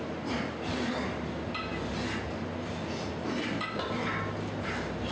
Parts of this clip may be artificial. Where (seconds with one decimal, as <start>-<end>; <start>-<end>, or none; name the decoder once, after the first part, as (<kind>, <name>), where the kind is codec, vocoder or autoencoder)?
none

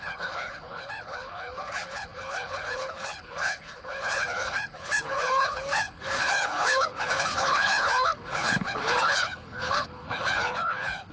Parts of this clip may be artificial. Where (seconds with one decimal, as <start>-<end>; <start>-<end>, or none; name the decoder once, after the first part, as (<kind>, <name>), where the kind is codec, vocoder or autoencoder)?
0.0-11.1 (codec, HILCodec)